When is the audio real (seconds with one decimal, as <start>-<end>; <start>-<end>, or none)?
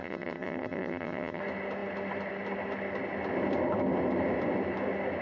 1.4-5.2